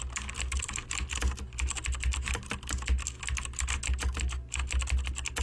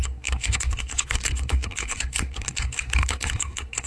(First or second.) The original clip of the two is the first